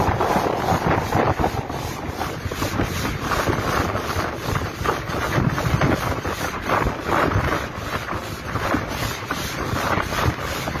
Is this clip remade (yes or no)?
yes